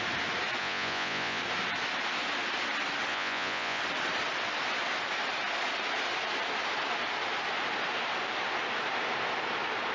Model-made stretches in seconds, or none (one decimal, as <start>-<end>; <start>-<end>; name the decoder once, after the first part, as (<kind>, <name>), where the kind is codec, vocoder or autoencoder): 0.6-1.4 (vocoder, Vocos); 3.1-3.8